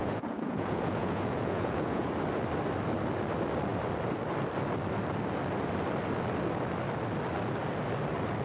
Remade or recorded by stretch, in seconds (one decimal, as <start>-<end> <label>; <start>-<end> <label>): 0.0-2.1 remade; 2.1-8.4 recorded